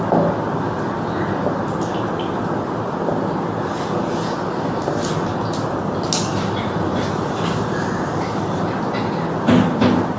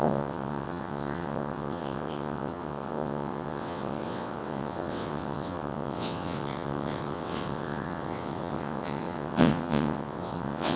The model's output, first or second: second